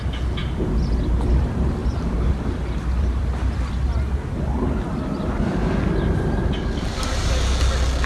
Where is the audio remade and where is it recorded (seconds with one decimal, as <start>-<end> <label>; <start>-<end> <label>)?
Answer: 0.0-1.8 recorded; 1.8-3.9 remade; 3.9-5.6 recorded; 5.6-7.3 remade; 7.3-8.1 recorded